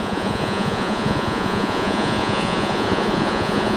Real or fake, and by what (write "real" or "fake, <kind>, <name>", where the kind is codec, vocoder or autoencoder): fake, vocoder, Vocos